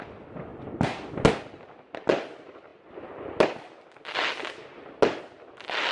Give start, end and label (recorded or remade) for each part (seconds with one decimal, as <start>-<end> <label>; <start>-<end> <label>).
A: 0.0-5.9 recorded